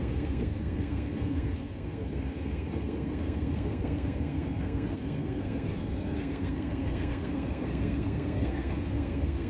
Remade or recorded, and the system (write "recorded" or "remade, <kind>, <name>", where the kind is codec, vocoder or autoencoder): remade, codec, SNAC